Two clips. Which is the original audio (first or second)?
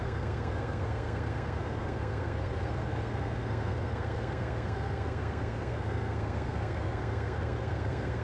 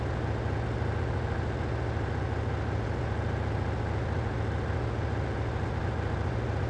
second